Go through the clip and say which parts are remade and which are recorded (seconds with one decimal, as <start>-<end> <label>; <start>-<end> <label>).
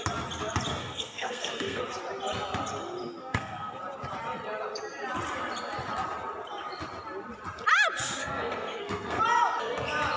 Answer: 0.0-0.8 recorded; 0.8-1.8 remade; 1.8-3.2 recorded; 3.2-3.8 remade; 3.8-8.2 recorded; 8.2-9.2 remade; 9.2-10.2 recorded